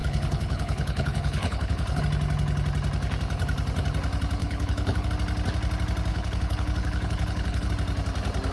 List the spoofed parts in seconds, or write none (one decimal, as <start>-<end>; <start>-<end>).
0.0-2.0; 4.4-5.1; 6.1-7.7